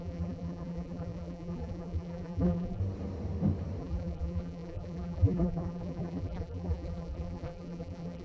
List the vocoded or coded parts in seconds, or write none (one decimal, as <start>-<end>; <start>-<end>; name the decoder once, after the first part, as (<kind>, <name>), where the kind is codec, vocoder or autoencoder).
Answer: 0.0-2.8 (vocoder, BigVGAN v2); 3.8-8.2